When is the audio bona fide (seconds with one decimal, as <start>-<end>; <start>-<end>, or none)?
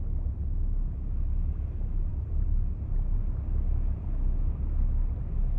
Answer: 0.0-5.6